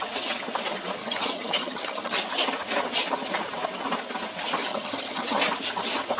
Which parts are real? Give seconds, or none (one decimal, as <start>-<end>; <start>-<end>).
0.0-1.0; 2.2-4.6; 5.4-6.2